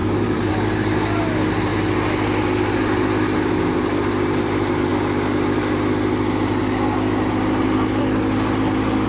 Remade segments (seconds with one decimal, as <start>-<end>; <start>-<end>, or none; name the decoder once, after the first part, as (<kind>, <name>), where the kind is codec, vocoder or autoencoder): 0.0-0.5 (vocoder, BigVGAN v2)